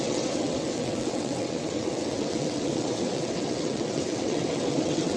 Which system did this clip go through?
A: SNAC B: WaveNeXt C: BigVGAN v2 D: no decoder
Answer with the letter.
B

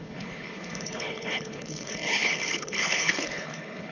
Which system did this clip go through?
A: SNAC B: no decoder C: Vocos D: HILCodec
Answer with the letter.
D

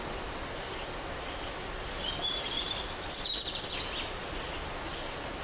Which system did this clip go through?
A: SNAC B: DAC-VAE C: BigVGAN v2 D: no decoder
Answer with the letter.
D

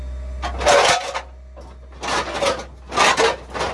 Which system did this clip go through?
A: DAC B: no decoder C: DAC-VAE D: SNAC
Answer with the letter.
B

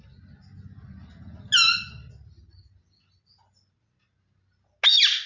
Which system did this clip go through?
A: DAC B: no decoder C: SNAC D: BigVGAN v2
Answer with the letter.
B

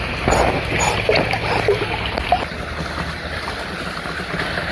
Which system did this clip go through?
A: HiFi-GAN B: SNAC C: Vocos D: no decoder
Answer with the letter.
D